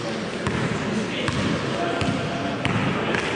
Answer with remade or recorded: recorded